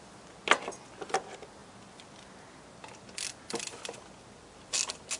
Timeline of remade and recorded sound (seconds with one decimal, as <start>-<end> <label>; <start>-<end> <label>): 0.0-5.2 recorded